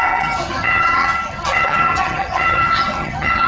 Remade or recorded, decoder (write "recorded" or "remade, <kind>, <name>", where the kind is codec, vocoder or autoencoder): remade, vocoder, HiFi-GAN